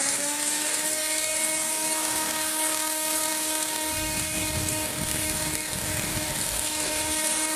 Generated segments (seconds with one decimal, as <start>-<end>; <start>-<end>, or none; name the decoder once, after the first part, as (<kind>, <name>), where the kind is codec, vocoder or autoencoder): 0.0-7.6 (codec, DAC)